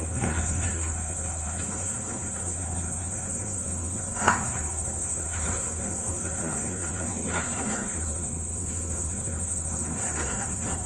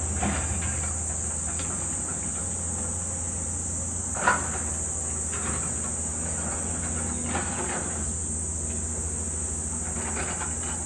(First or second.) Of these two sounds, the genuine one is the second